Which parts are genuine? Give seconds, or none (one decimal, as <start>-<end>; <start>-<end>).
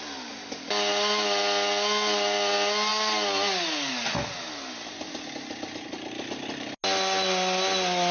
0.0-8.1